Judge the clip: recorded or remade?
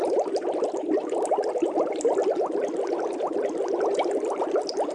recorded